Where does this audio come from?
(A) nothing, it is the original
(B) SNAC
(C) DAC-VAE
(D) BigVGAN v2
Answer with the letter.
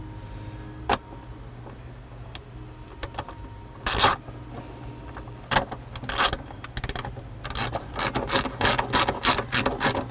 A